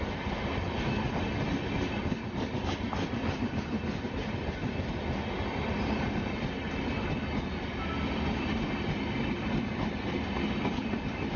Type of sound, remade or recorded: recorded